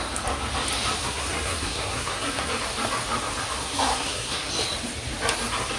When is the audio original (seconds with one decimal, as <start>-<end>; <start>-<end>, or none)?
0.0-1.0; 2.5-3.6; 4.5-5.8